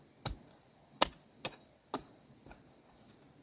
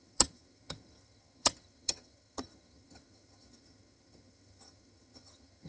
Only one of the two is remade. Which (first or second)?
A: second